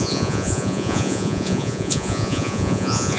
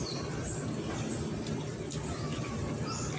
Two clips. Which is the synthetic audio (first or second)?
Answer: first